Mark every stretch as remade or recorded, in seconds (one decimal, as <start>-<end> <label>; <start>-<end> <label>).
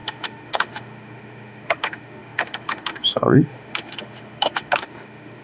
0.0-5.4 remade